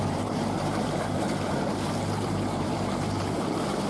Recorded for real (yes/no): no